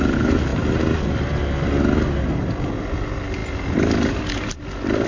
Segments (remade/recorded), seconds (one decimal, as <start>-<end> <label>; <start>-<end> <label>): 0.0-5.1 recorded